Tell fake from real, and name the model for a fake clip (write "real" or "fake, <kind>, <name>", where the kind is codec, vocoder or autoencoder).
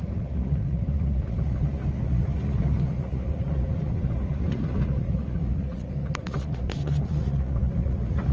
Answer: fake, vocoder, Vocos